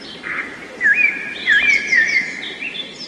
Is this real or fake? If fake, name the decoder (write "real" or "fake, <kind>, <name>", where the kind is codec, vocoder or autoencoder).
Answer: fake, vocoder, BigVGAN v2